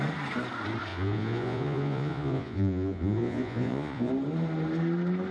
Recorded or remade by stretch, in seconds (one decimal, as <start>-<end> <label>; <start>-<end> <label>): 0.0-0.9 recorded; 0.9-4.1 remade; 4.1-5.3 recorded